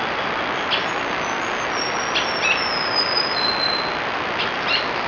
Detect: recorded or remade recorded